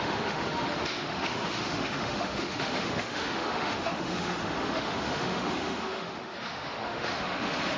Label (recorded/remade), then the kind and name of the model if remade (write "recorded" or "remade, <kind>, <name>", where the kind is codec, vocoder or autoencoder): remade, autoencoder, DAC-VAE